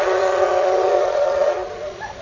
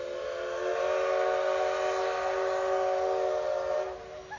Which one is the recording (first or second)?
second